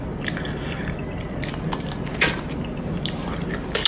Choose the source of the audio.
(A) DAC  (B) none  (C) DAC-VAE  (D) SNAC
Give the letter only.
B